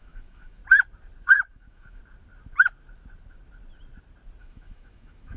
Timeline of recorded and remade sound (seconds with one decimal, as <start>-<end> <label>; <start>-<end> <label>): 0.0-0.6 remade; 0.6-1.5 recorded; 1.5-2.0 remade; 2.0-4.4 recorded; 4.4-5.4 remade